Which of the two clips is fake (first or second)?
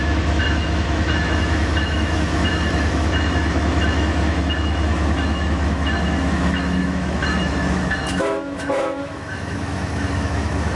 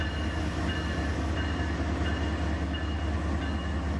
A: first